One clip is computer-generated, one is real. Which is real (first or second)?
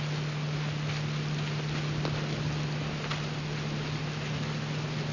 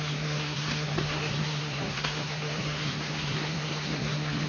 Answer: first